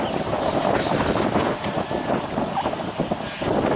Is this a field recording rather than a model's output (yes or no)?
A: no